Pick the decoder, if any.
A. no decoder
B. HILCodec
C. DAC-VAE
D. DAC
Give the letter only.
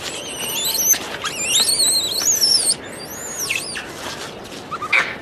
A